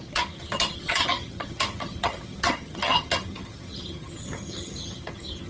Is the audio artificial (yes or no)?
yes